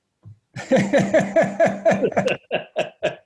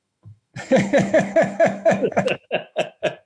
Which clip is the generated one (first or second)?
second